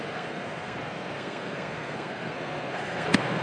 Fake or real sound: fake